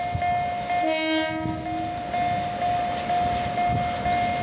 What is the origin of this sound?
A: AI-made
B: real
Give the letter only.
B